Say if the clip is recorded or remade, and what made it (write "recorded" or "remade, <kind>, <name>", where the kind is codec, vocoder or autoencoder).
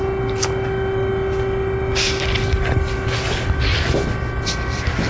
recorded